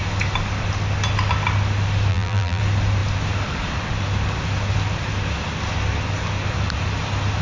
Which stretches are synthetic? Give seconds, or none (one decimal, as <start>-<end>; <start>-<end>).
2.1-2.6